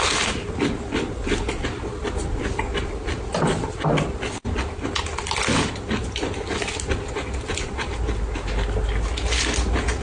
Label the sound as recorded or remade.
recorded